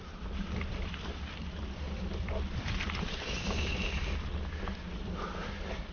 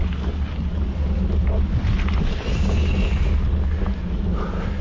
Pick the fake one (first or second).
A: first